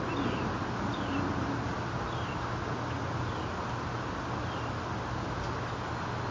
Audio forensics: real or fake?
real